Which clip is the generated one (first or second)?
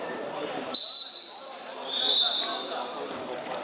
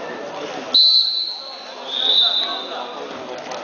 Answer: first